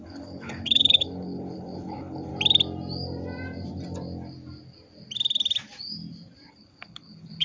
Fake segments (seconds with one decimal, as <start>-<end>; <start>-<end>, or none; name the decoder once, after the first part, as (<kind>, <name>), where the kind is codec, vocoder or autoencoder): 0.0-2.3 (codec, HILCodec); 6.5-7.4